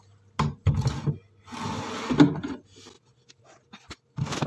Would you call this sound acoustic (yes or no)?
yes